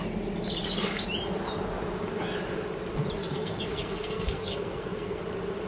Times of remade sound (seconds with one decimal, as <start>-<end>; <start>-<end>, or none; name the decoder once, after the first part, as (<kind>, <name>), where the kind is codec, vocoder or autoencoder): 3.2-5.2 (codec, SNAC)